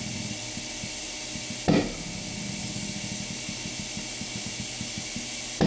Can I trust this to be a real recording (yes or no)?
yes